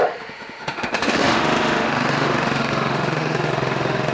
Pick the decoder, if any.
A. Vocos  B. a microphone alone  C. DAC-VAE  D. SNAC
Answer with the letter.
C